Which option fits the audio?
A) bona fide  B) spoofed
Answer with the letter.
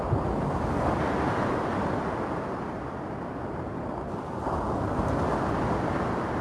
A